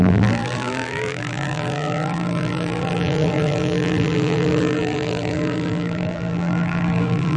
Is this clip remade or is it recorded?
remade